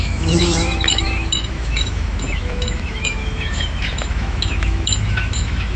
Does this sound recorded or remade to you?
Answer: remade